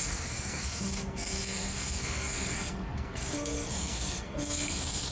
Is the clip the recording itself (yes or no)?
no